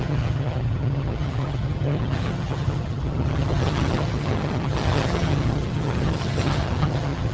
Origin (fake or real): fake